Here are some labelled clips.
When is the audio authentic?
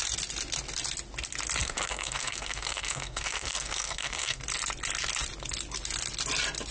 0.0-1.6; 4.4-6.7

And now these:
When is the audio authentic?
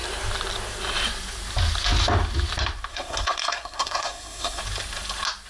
0.0-2.9; 4.6-5.5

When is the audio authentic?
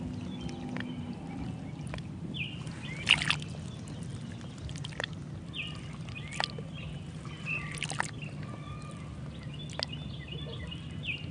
0.0-11.3